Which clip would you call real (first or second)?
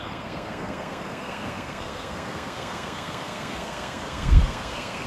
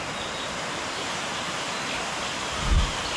second